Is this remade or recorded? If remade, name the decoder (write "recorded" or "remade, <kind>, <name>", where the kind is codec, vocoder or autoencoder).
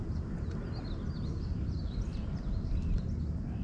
recorded